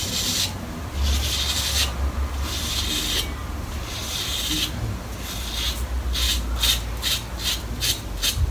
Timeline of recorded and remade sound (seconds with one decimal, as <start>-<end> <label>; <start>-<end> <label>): 0.0-8.5 recorded